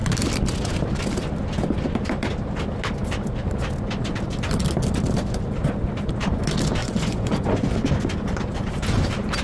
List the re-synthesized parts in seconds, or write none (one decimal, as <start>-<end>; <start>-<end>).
6.8-7.9